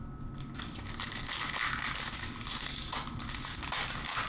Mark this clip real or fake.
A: real